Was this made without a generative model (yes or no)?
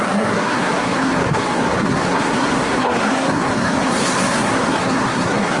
no